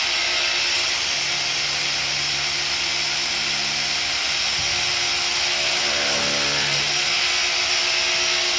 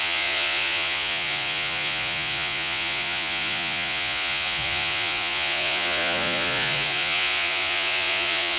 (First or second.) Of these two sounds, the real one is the first